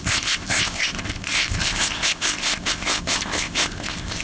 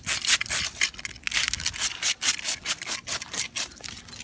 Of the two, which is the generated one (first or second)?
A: first